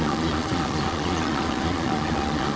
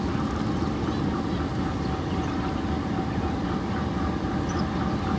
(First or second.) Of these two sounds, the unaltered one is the second